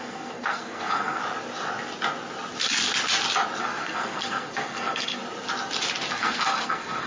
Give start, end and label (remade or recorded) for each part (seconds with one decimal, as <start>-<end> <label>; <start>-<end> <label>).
0.0-1.2 remade; 1.2-3.6 recorded; 3.6-5.2 remade; 5.2-6.1 recorded; 6.1-7.1 remade